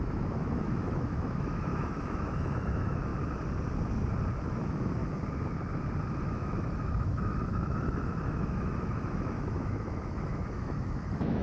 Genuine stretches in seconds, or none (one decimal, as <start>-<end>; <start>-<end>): 3.1-4.4; 5.0-6.2